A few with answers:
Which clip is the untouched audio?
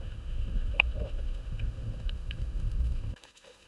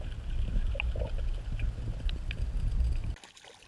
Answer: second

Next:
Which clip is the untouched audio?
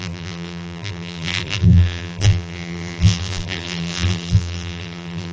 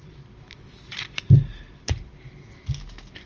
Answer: second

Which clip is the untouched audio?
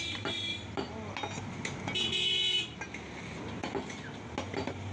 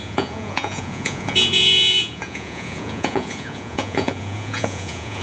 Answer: first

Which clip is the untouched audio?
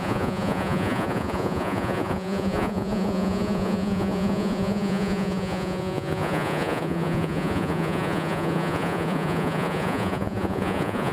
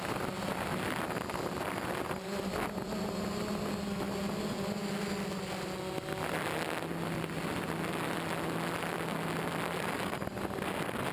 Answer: second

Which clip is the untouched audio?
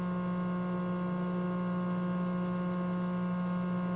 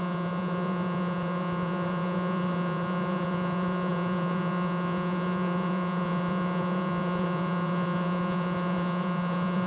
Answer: first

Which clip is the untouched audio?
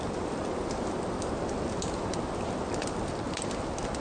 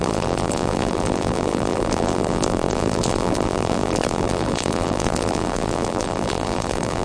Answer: first